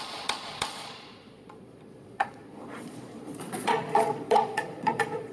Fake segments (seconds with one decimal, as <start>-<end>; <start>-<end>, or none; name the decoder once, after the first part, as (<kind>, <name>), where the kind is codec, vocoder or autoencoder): 0.0-5.3 (vocoder, Vocos)